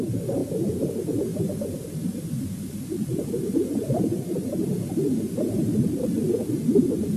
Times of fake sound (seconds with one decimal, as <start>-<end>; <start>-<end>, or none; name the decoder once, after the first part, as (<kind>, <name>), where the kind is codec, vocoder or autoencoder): 0.0-0.4 (vocoder, BigVGAN v2); 0.9-7.2

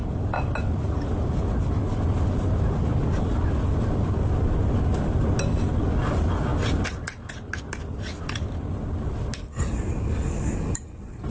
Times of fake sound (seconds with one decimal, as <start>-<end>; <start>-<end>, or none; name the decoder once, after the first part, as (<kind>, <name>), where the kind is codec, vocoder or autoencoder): none

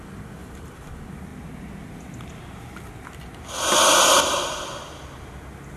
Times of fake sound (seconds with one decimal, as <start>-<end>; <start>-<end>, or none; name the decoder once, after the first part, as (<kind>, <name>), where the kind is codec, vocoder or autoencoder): 0.4-0.9 (vocoder, BigVGAN v2)

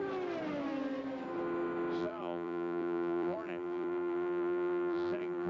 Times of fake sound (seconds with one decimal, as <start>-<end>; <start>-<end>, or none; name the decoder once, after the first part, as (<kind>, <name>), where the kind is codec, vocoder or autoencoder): 2.0-5.5 (vocoder, BigVGAN v2)

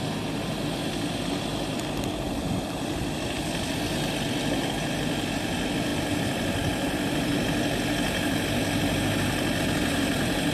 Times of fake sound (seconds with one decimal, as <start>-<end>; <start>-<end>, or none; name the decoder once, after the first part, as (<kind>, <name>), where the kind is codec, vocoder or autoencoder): none

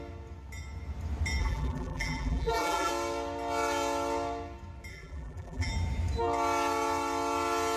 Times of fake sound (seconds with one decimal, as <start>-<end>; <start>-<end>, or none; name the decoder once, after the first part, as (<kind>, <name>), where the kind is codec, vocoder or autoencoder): 1.4-2.9 (vocoder, BigVGAN v2); 4.9-5.7

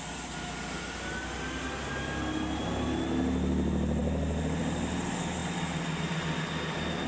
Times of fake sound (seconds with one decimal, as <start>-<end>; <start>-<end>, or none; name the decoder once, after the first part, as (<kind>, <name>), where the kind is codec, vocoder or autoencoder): none